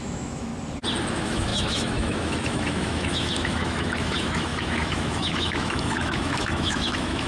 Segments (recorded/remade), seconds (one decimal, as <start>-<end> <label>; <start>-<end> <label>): 0.0-0.5 remade; 0.5-1.1 recorded; 1.1-7.3 remade